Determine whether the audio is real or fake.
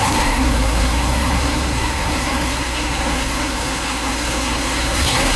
fake